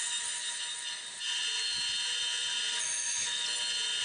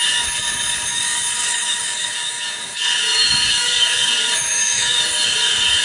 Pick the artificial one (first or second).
second